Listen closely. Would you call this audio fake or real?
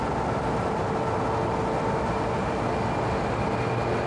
real